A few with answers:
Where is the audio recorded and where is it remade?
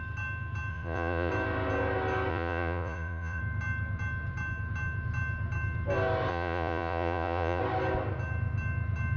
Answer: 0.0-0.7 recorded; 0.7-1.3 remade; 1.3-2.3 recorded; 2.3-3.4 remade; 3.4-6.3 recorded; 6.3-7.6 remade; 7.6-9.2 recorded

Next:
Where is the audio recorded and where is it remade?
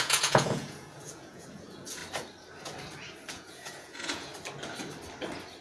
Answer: 0.0-2.0 remade; 2.0-3.3 recorded; 3.3-4.3 remade; 4.3-5.6 recorded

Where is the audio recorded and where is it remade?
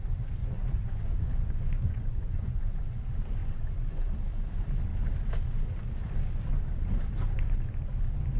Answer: 0.0-0.4 recorded; 0.4-3.0 remade; 3.0-3.4 recorded; 3.4-4.1 remade; 4.1-8.4 recorded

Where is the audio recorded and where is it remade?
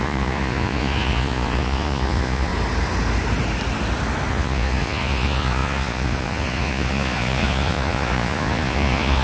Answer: 0.0-2.5 remade; 2.5-4.3 recorded; 4.3-9.2 remade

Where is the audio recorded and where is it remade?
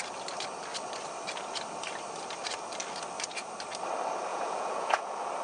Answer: 0.0-4.3 recorded; 4.3-5.0 remade; 5.0-5.4 recorded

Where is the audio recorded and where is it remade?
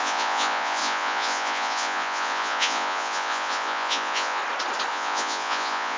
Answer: 0.0-4.4 remade; 4.4-4.9 recorded; 4.9-6.0 remade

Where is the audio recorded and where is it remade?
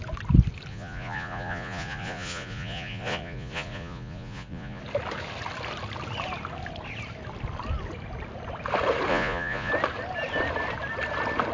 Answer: 0.0-0.7 recorded; 0.7-4.8 remade; 4.8-9.1 recorded; 9.1-9.7 remade; 9.7-11.5 recorded